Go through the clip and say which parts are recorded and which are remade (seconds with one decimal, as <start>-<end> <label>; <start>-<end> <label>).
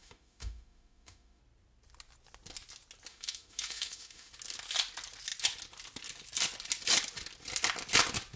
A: 0.0-1.4 remade; 1.4-3.1 recorded; 3.1-4.3 remade; 4.3-8.4 recorded